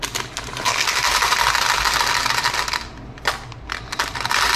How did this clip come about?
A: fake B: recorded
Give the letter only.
A